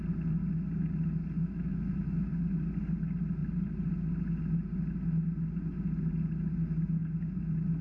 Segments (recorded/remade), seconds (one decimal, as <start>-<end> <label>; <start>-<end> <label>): 0.0-1.4 recorded; 1.4-2.3 remade; 2.3-7.8 recorded